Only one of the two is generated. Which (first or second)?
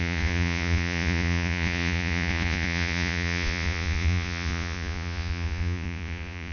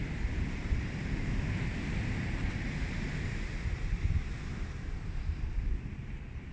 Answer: first